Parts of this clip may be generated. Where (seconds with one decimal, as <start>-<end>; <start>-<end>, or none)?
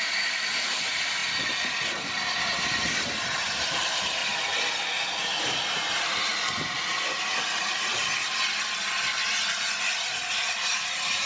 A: 0.0-1.2; 3.2-4.2; 5.4-6.3; 10.3-11.3